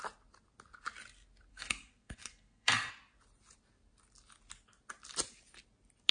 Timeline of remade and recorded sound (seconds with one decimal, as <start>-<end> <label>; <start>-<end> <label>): 0.0-1.5 recorded; 1.5-2.9 remade; 2.9-6.1 recorded